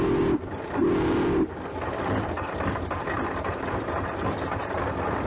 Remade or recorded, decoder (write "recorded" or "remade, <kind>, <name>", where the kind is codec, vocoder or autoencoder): recorded